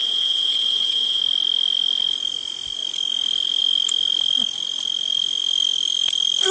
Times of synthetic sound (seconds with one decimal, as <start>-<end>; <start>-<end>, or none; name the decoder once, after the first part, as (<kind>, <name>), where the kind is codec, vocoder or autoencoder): 0.0-1.2 (vocoder, WaveNeXt)